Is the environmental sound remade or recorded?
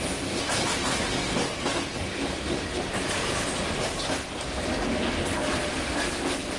recorded